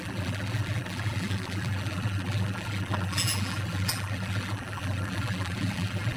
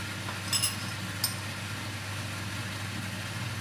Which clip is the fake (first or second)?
first